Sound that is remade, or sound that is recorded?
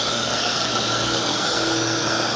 remade